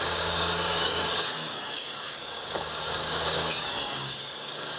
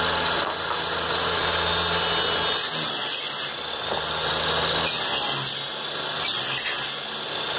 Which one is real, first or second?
second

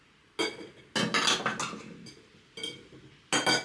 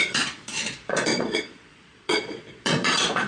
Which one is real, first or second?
first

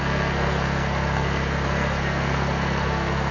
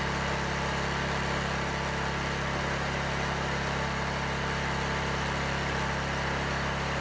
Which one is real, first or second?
second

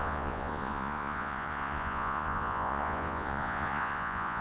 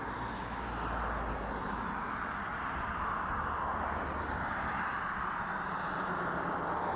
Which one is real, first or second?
second